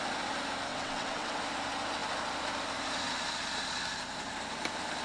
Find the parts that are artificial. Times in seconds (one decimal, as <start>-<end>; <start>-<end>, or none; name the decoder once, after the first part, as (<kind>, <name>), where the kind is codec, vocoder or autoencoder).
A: 0.7-1.4 (vocoder, WaveNeXt)